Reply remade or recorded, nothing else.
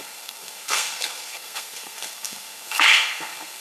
remade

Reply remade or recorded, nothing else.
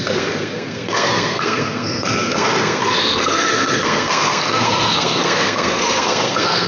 remade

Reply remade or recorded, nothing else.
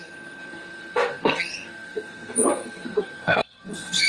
remade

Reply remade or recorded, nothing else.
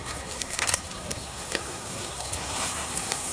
remade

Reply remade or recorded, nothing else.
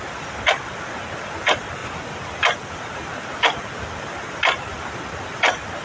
recorded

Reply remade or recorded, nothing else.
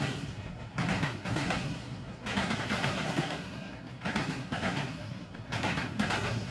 remade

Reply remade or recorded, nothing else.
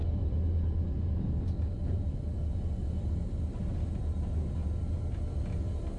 recorded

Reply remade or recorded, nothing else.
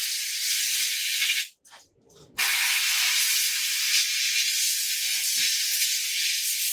recorded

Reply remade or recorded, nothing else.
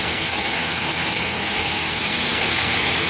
remade